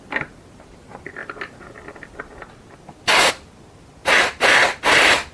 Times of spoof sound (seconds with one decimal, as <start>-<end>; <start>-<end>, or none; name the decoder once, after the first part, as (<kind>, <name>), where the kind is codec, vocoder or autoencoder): none